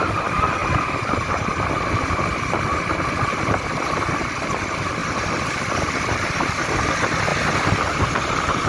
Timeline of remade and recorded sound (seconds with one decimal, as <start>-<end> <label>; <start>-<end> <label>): 0.0-0.6 remade; 0.6-2.0 recorded; 2.0-5.0 remade; 5.0-5.5 recorded; 5.5-7.3 remade; 7.3-8.0 recorded; 8.0-8.7 remade